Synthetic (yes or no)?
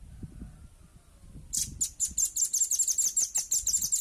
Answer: no